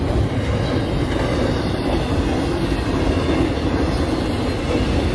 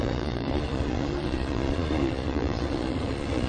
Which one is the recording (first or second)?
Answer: first